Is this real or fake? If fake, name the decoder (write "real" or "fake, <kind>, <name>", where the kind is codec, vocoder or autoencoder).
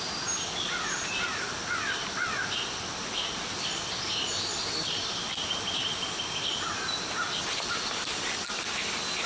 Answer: real